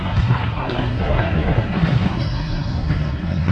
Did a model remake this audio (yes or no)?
yes